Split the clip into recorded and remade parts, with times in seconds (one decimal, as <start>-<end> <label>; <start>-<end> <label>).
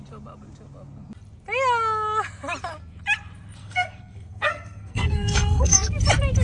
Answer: 0.0-3.6 recorded; 3.6-5.9 remade; 5.9-6.4 recorded